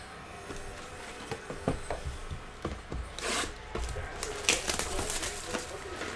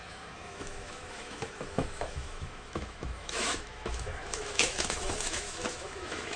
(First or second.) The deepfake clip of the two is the second